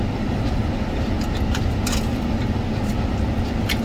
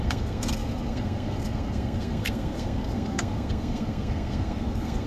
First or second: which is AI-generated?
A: second